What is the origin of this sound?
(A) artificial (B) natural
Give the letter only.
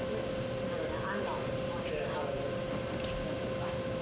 B